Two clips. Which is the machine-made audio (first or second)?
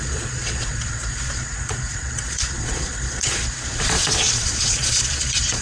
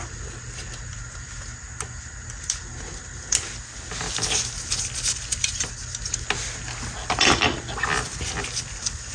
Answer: first